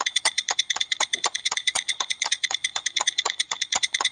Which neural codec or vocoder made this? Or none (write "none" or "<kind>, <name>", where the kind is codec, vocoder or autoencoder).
vocoder, Vocos